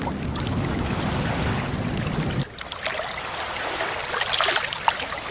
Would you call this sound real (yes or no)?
yes